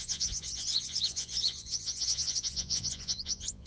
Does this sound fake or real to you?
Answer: fake